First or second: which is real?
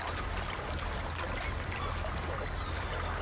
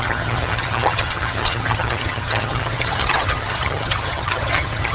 first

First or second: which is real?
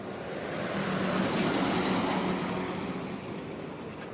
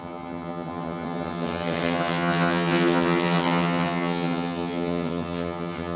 first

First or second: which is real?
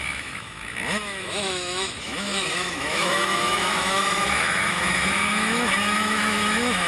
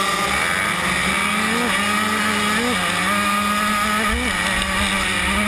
second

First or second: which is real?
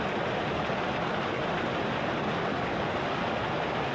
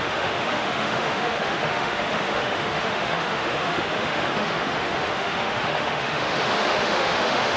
first